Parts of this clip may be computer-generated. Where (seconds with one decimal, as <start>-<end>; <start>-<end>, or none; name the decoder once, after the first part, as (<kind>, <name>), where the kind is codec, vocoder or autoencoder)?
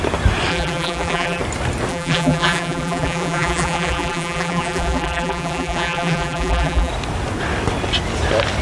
0.5-1.4 (vocoder, BigVGAN v2); 1.9-6.9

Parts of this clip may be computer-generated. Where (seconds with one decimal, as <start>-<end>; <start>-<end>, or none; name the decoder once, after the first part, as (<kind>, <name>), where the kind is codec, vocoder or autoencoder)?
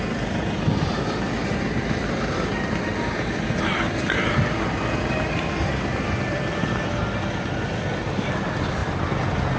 1.7-2.2 (vocoder, BigVGAN v2); 3.7-6.7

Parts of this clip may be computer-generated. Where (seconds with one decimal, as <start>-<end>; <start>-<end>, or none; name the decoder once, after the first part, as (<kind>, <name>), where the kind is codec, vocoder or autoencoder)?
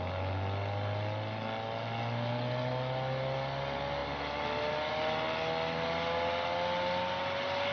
none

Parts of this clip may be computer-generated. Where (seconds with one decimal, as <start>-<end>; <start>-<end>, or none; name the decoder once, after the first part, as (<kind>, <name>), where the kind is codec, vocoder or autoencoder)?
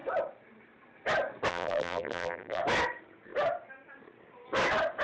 1.5-2.6 (vocoder, BigVGAN v2)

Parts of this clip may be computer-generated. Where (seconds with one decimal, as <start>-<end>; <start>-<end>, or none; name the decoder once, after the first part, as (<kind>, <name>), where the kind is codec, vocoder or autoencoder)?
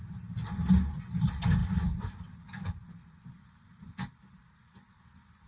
1.6-4.9 (vocoder, BigVGAN v2)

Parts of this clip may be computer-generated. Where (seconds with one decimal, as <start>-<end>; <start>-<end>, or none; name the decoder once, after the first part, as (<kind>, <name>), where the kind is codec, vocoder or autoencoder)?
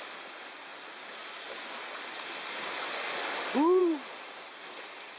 none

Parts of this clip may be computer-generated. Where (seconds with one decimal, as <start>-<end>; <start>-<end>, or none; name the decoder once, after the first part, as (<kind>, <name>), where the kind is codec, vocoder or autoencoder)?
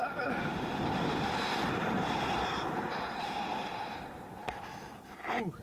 0.4-3.5 (vocoder, BigVGAN v2)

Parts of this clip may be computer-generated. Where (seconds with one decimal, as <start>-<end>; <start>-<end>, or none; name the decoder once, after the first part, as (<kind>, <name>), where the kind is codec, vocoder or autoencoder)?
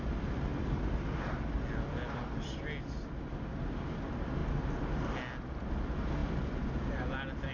none